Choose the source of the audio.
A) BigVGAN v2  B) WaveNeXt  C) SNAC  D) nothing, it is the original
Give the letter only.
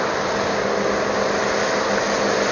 D